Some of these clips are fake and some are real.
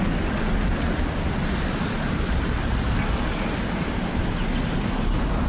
real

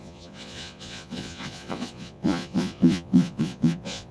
fake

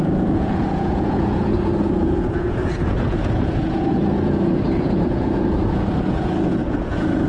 fake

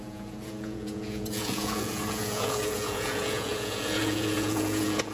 fake